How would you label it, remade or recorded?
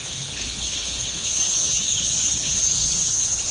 remade